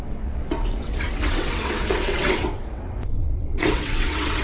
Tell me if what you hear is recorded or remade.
remade